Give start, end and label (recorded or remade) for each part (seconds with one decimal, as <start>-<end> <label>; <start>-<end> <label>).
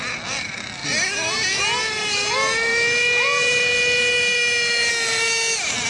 0.0-5.9 recorded